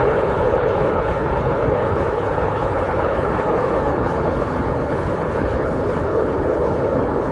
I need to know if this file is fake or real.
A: fake